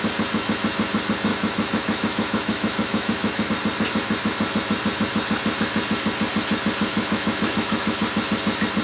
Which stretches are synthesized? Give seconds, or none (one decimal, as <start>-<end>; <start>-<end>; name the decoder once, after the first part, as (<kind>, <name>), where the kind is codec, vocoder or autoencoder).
1.3-3.5 (autoencoder, DAC-VAE); 6.9-8.0